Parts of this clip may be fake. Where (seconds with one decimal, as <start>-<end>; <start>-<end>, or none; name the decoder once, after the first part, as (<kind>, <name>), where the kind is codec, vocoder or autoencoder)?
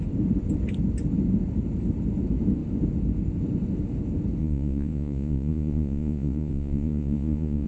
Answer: 4.4-7.7 (vocoder, Vocos)